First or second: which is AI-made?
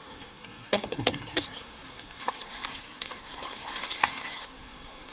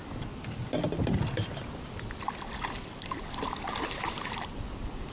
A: first